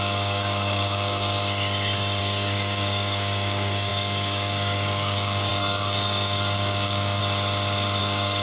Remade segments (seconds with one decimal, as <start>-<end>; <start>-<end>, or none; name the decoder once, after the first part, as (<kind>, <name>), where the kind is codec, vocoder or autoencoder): 0.0-1.4 (codec, DAC); 2.2-7.2; 8.0-8.4